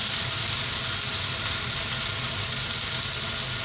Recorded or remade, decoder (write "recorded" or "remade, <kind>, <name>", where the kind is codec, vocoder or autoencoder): recorded